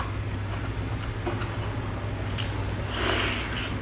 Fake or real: real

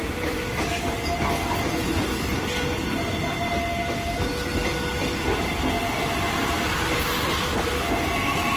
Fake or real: real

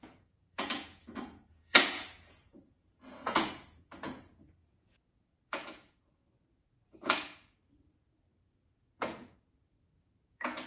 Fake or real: fake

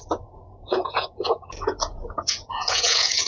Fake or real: fake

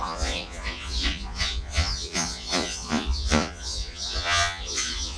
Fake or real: fake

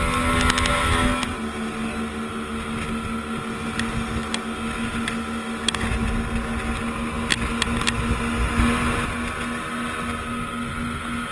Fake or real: real